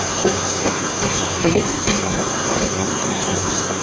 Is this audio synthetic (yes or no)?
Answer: yes